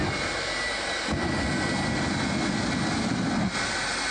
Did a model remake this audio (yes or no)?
no